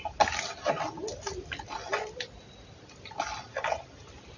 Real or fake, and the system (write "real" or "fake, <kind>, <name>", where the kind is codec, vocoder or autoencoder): real